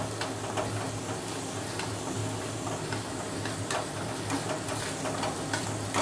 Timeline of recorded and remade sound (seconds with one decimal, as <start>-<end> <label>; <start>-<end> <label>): 0.0-6.0 recorded